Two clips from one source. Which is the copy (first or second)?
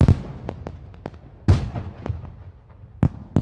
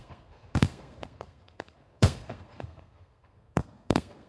second